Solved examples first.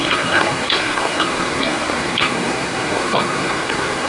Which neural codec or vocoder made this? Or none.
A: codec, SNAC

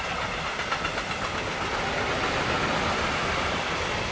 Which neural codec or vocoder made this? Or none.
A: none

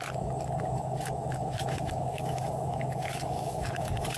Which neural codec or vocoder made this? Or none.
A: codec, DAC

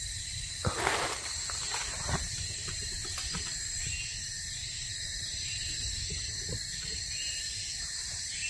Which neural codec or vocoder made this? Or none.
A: vocoder, BigVGAN v2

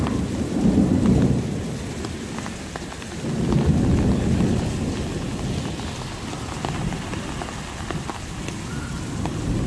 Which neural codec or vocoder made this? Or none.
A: none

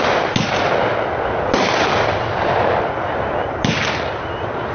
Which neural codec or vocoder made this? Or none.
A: none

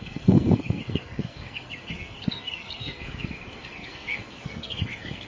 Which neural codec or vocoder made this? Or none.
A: codec, SNAC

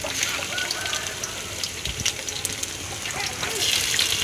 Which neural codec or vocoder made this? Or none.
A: none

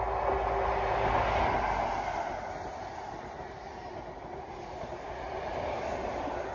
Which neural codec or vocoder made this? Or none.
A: none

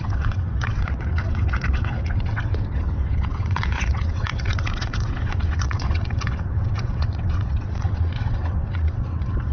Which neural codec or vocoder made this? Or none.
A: vocoder, WaveNeXt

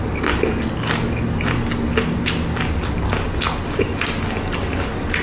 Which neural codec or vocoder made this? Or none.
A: none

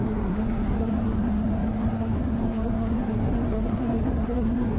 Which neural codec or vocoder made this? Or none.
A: codec, SNAC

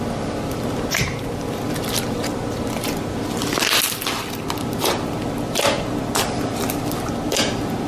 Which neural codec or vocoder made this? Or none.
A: none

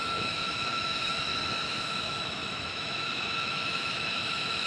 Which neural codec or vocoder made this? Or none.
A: autoencoder, DAC-VAE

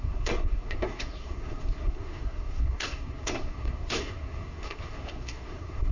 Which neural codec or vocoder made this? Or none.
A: codec, SNAC